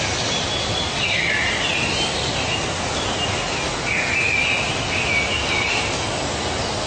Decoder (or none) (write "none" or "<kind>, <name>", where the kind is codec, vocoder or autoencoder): none